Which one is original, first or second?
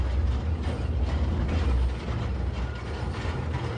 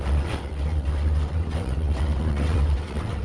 first